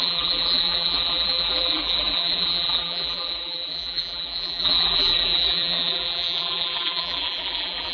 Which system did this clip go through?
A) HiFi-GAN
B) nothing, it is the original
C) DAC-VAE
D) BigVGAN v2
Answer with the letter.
D